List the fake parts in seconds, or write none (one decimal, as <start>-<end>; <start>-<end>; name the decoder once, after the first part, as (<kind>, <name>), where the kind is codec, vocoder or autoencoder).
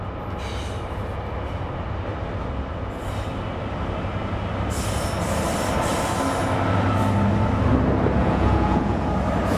8.2-9.1 (vocoder, Vocos)